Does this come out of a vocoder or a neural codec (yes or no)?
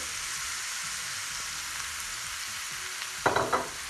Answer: no